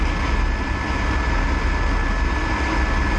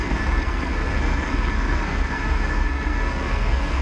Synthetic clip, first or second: second